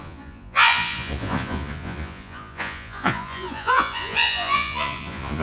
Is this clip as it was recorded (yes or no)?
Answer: no